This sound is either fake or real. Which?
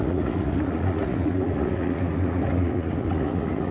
fake